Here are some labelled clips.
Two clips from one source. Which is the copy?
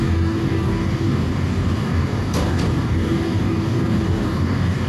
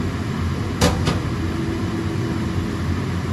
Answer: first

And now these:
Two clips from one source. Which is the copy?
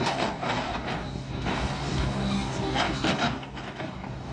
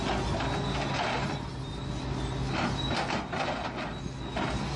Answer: first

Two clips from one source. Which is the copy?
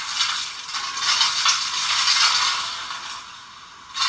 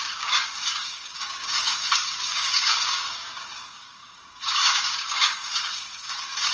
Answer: second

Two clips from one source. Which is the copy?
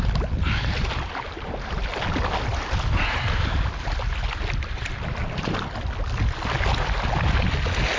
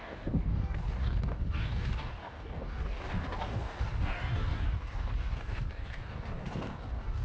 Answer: second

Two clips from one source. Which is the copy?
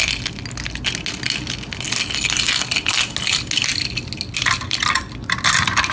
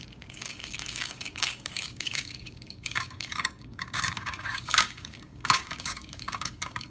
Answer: second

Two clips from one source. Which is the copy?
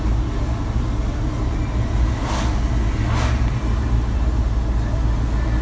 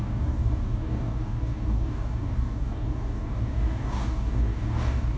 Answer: second